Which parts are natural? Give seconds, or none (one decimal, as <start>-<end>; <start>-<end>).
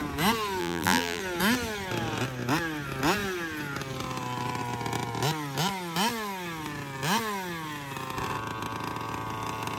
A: 0.0-0.6; 1.2-9.8